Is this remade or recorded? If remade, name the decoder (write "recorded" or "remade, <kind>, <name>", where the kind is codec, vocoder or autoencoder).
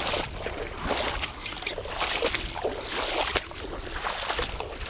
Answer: recorded